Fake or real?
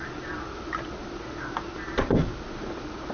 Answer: real